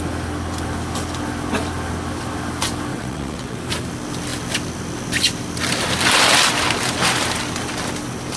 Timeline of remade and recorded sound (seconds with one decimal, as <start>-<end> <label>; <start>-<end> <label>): 0.0-2.9 recorded; 2.9-3.6 remade; 3.6-8.4 recorded